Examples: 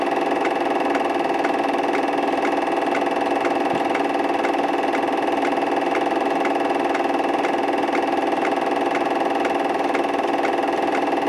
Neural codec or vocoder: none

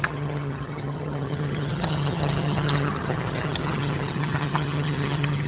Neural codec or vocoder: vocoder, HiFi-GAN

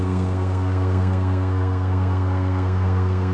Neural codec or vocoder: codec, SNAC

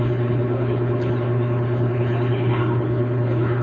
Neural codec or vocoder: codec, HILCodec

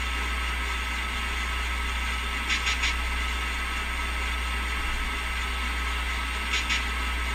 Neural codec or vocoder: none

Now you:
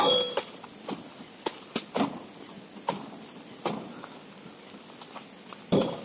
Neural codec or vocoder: none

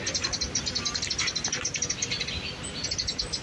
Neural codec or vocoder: none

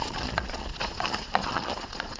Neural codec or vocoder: vocoder, Vocos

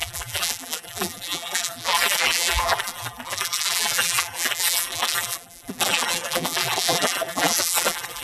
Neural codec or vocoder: vocoder, BigVGAN v2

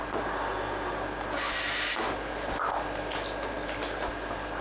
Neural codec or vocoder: none